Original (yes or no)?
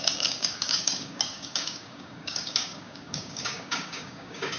no